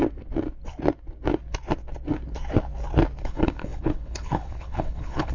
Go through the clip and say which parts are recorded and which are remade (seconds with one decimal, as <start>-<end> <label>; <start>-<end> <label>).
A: 0.0-3.2 recorded; 3.2-5.3 remade